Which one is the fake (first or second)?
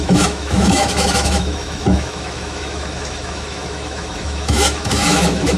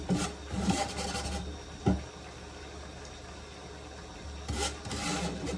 first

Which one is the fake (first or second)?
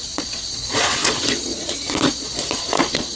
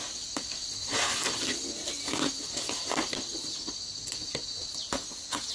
first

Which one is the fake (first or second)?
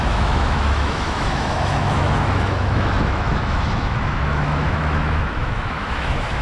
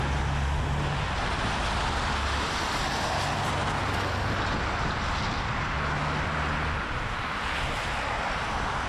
first